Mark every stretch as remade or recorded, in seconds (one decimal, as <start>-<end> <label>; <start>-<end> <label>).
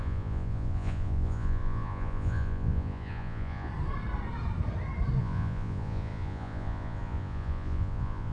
0.0-3.7 remade; 3.7-5.2 recorded; 5.2-8.3 remade